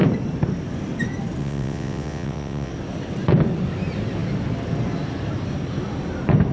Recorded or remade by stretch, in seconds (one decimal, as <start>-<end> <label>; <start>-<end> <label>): 0.0-1.4 recorded; 1.4-2.7 remade; 2.7-6.5 recorded